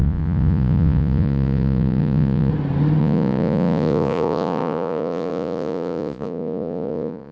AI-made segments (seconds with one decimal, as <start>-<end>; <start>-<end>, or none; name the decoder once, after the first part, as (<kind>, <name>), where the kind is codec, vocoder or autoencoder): 0.0-2.5 (vocoder, Vocos); 3.0-7.3